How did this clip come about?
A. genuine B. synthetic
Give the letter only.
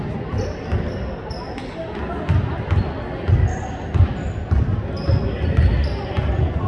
A